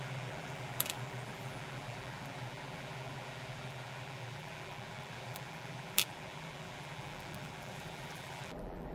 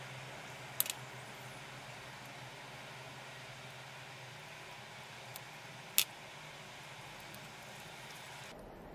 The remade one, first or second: first